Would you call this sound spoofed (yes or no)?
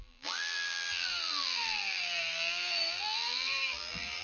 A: yes